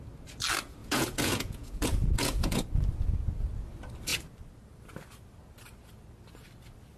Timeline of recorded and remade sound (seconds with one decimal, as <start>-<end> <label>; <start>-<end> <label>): 0.0-0.8 recorded; 0.8-2.6 remade; 2.6-7.0 recorded